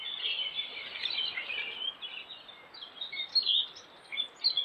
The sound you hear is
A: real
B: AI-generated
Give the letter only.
A